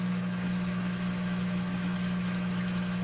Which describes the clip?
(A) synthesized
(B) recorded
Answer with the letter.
A